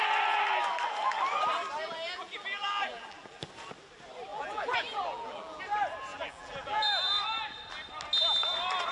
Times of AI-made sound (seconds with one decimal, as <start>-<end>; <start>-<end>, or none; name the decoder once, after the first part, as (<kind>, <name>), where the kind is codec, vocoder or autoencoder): 1.8-3.4 (vocoder, BigVGAN v2); 4.3-5.6; 6.1-6.9